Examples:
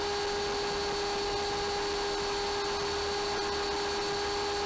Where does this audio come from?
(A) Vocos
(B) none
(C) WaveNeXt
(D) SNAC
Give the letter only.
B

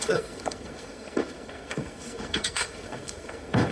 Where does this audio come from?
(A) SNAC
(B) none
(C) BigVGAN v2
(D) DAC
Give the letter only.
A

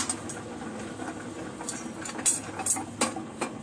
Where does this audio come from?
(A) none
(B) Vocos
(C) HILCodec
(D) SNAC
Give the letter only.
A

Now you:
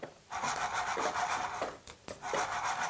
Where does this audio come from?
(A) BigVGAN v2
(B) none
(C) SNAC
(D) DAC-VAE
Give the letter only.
B